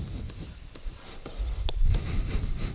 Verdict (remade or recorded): recorded